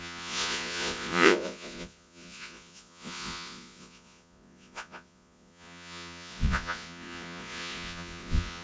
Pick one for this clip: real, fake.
fake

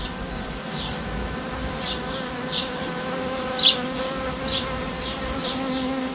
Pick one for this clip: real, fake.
real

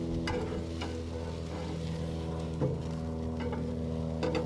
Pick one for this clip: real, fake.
real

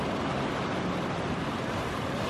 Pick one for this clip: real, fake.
real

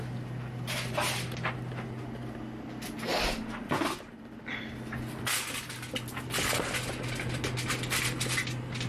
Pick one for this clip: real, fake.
real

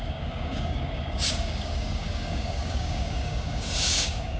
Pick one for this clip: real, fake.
fake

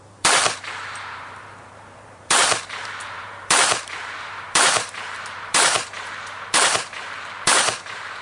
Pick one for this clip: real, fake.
fake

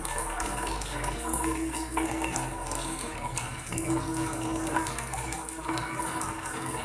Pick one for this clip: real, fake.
fake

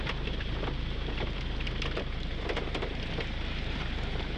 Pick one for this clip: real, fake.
fake